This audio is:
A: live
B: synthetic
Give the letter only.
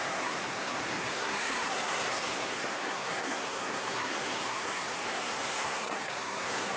B